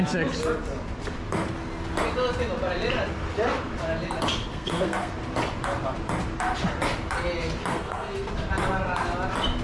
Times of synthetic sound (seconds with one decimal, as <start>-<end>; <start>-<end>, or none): 4.5-5.1; 7.7-8.3